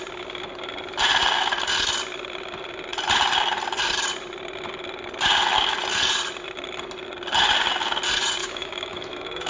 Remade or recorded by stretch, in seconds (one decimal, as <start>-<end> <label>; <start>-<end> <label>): 0.0-8.4 recorded; 8.4-9.5 remade